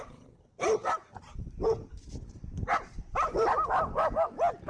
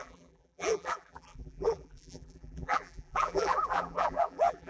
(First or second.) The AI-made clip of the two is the second